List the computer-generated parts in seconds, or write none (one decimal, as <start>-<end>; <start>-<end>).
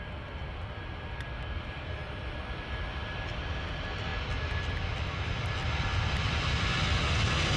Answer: none